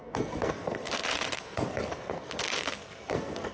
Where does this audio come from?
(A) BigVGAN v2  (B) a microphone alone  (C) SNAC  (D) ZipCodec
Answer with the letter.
C